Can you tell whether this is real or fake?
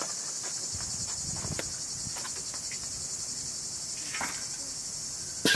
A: real